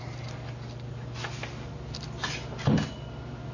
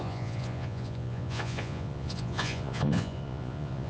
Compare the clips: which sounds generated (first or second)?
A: second